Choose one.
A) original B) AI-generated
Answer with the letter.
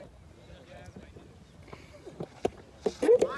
A